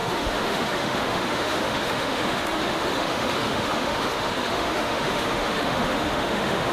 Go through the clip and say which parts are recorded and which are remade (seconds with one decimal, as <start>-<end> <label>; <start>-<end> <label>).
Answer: 0.0-6.7 remade